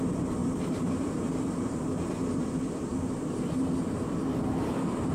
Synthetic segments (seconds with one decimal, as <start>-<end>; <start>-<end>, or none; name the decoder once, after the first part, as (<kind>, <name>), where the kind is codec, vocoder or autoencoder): 0.4-1.9 (vocoder, BigVGAN v2)